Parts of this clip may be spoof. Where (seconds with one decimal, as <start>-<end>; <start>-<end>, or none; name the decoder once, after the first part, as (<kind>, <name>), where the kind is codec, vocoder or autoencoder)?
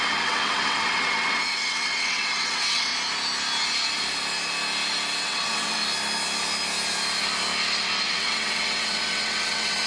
0.0-2.9 (vocoder, WaveNeXt); 5.2-5.8; 8.1-9.9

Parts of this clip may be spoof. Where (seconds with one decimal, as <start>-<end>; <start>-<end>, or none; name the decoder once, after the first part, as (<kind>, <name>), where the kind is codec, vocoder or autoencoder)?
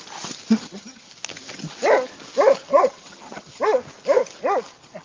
0.6-1.1 (vocoder, HiFi-GAN); 2.7-3.6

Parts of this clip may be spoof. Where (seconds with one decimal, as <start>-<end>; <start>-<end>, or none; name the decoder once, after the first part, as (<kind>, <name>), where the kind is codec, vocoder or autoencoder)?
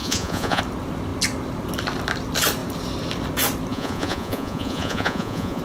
0.0-0.6 (vocoder, Vocos); 3.7-5.6